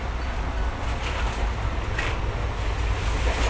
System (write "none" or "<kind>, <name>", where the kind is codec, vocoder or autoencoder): none